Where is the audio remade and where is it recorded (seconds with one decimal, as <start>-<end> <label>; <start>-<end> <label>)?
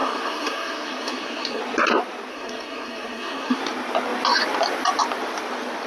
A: 0.0-1.6 remade; 1.6-2.3 recorded; 2.3-3.6 remade; 3.6-5.9 recorded